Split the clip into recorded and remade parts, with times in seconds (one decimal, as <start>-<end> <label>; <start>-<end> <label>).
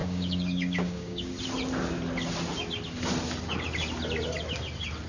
0.0-1.3 remade; 1.3-5.1 recorded